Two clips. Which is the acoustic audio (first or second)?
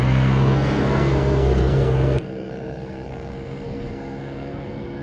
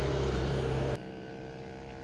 second